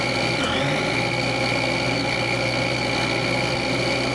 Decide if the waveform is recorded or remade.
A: recorded